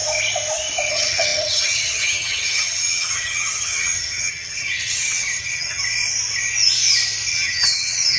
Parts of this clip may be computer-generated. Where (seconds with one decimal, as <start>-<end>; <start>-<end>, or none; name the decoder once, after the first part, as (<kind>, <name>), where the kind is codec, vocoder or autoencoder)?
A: 0.9-5.8 (vocoder, HiFi-GAN); 7.3-8.2